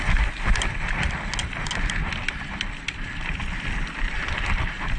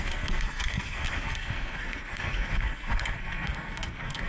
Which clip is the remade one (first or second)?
second